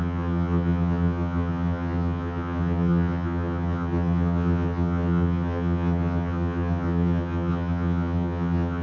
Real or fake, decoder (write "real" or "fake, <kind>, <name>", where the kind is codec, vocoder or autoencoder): fake, vocoder, HiFi-GAN